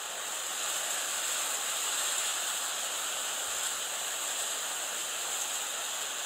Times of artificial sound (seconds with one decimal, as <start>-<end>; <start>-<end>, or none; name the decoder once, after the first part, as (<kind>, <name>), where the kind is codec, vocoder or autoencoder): none